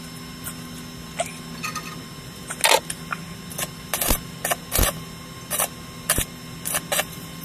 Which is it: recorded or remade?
recorded